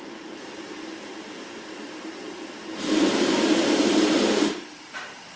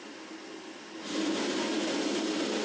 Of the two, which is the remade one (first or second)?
first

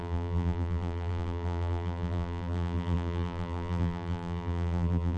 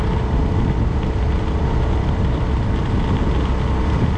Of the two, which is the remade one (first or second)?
first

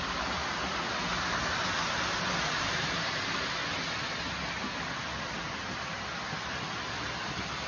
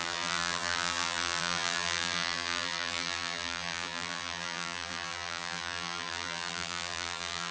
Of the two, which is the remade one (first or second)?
second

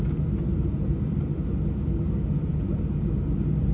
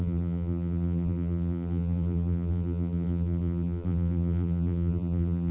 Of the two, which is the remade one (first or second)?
second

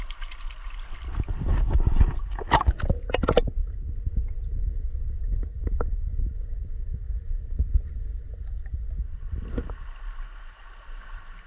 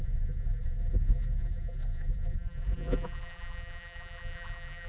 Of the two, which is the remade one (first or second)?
second